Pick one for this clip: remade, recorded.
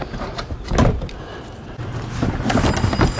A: recorded